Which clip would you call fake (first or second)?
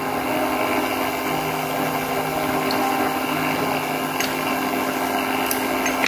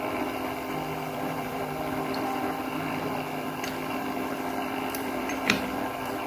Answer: second